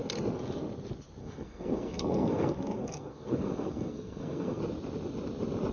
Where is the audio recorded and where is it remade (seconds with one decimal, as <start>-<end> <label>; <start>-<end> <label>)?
0.0-1.2 recorded; 1.2-4.6 remade; 4.6-5.7 recorded